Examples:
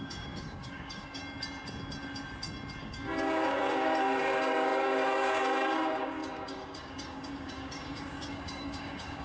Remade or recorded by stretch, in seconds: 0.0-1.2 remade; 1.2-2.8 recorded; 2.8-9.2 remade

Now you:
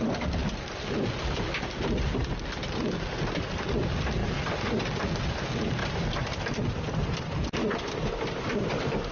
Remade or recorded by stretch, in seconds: 0.0-9.1 recorded

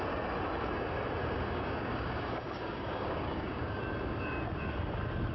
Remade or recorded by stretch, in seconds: 0.0-1.2 recorded; 1.2-3.8 remade; 3.8-5.3 recorded